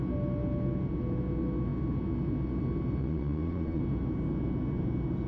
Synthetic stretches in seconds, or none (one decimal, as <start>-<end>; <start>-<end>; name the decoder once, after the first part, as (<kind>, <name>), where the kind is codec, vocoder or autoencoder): 3.0-3.8 (vocoder, Vocos)